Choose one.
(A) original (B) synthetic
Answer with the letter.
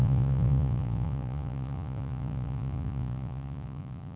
B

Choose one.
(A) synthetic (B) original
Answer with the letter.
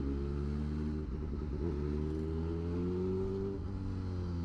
B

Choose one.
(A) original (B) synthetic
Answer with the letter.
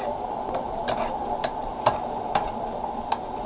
B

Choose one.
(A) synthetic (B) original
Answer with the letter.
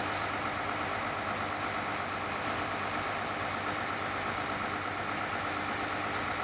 B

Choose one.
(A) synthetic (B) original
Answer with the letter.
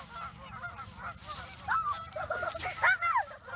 B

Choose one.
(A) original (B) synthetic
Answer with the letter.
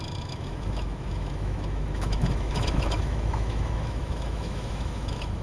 B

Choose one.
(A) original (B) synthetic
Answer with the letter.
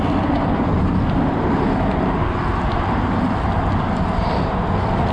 A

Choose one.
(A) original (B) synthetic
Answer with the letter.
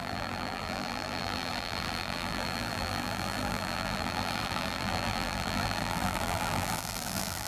B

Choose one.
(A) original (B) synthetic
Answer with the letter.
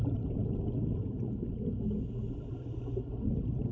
A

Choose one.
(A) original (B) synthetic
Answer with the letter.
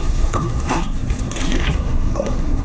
B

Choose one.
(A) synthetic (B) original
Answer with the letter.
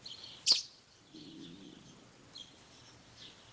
B